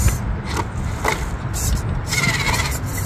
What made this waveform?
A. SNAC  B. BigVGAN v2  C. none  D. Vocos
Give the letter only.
C